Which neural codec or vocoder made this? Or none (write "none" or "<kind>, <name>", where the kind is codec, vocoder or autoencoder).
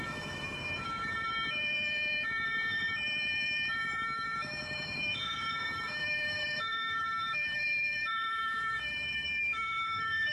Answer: autoencoder, DAC-VAE